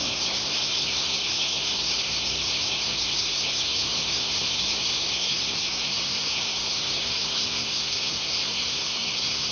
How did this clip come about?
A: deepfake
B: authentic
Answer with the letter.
A